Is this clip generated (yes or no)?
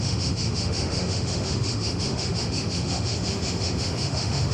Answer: yes